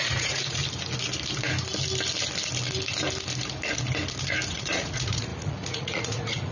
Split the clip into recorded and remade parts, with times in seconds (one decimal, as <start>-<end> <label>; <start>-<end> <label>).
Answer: 0.0-0.6 remade; 0.6-4.5 recorded; 4.5-6.5 remade